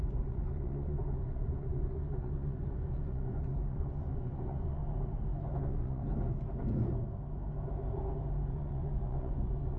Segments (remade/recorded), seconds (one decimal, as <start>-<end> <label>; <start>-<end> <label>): 0.0-4.8 remade; 4.8-5.6 recorded; 5.6-6.0 remade; 6.0-8.5 recorded; 8.5-9.8 remade